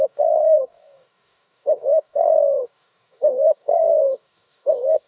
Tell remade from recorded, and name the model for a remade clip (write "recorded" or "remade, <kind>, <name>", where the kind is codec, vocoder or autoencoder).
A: remade, codec, DAC